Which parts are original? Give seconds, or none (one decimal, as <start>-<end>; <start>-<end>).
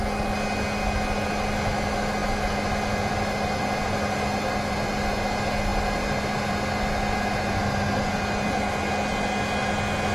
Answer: 0.0-10.1